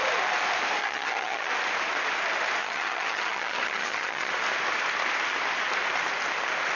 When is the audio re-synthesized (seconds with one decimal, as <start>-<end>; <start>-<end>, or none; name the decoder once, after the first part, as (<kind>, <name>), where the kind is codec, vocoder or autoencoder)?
0.8-1.5 (vocoder, HiFi-GAN); 2.6-4.3